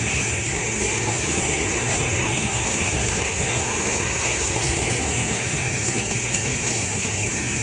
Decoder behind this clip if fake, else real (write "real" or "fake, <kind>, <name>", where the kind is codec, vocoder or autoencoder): fake, codec, SNAC